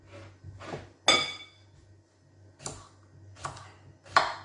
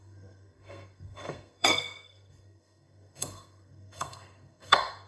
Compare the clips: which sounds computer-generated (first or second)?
second